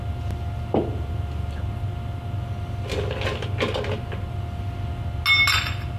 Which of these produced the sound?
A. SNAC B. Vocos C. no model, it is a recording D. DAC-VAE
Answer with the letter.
C